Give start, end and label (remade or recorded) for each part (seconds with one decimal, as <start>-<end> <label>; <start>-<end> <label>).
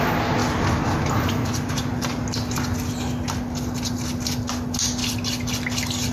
0.0-0.4 recorded; 0.4-1.7 remade; 1.7-6.1 recorded